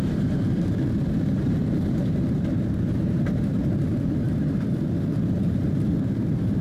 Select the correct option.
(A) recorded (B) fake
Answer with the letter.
B